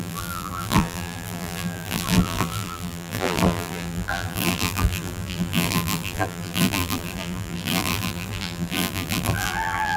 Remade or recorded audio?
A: remade